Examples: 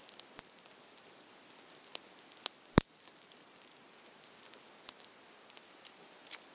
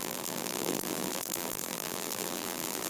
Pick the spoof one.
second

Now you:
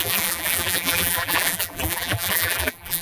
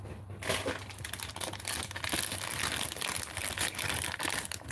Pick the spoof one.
first